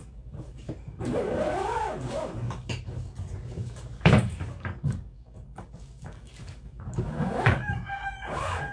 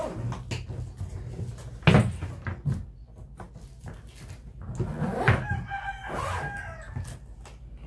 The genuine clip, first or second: second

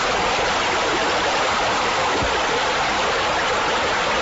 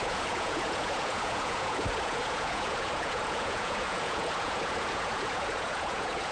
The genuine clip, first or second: first